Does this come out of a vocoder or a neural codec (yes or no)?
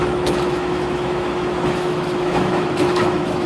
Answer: yes